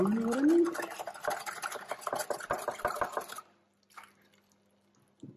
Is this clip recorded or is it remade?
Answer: recorded